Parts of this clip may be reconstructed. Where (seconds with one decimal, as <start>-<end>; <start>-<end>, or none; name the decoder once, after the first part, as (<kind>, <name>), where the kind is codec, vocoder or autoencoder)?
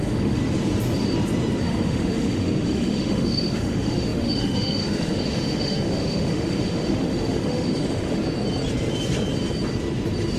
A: 0.0-0.4 (autoencoder, DAC-VAE); 1.6-8.2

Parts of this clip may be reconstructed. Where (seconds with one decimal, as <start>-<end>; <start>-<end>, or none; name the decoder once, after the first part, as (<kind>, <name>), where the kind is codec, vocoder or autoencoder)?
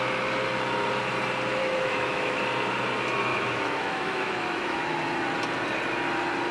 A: 1.6-2.4 (autoencoder, DAC-VAE); 3.3-5.0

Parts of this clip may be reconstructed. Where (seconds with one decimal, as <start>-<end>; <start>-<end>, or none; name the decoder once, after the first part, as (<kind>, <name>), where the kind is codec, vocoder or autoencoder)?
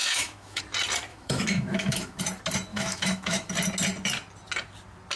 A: 0.0-0.6 (autoencoder, DAC-VAE); 1.1-2.2; 2.7-3.5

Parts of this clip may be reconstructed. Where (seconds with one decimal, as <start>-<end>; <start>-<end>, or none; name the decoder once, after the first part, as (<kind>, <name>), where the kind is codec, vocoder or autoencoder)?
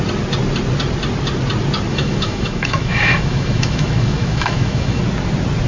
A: 1.9-5.0 (autoencoder, DAC-VAE)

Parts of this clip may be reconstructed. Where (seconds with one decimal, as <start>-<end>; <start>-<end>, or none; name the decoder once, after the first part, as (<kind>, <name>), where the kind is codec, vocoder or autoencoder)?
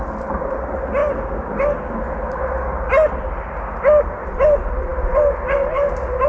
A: none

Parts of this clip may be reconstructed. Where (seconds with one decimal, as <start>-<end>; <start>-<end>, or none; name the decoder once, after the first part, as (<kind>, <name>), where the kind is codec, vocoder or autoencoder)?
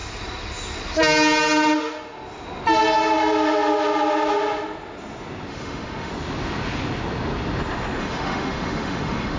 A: 5.5-6.1 (autoencoder, DAC-VAE); 8.0-9.4